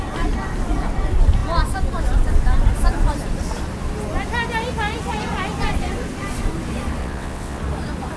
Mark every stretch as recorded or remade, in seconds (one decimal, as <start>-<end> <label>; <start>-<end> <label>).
0.0-7.0 recorded; 7.0-7.6 remade; 7.6-8.2 recorded